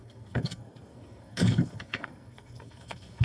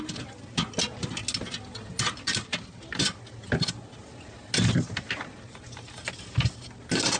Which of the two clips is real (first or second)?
second